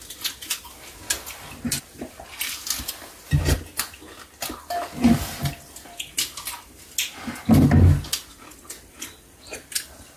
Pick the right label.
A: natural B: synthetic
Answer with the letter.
A